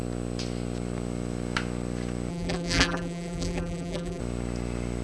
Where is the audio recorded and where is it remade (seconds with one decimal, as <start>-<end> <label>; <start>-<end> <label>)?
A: 0.0-2.3 recorded; 2.3-4.2 remade; 4.2-5.0 recorded